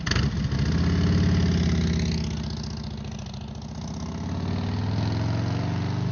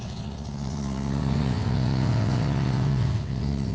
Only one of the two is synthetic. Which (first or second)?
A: second